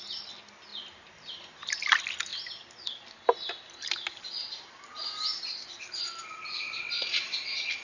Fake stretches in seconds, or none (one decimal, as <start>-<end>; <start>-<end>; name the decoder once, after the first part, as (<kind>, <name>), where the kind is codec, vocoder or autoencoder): none